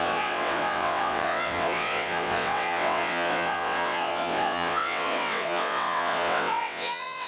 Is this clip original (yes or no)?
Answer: no